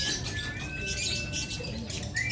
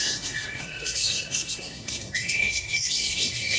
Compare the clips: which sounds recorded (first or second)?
first